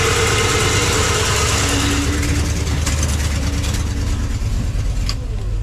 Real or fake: real